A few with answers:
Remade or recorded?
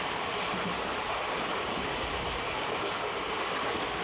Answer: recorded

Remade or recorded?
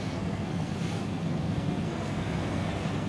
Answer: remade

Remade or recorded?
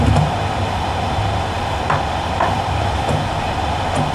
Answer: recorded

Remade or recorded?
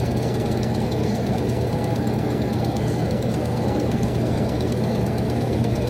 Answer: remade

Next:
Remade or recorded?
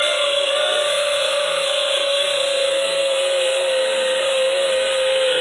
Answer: remade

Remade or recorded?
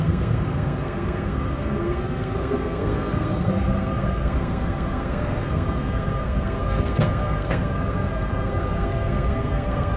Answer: remade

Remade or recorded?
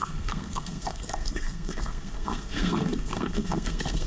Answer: remade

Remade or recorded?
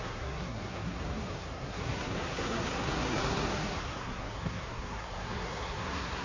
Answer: remade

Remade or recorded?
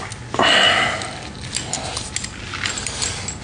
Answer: recorded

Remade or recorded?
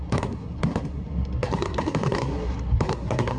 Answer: remade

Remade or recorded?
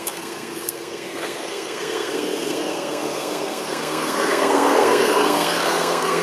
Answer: remade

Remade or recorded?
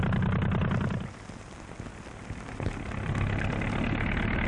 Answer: recorded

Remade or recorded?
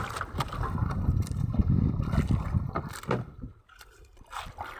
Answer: recorded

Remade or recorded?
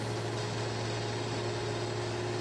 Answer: recorded